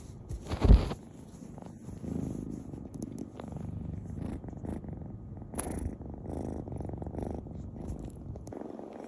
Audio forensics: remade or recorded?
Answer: recorded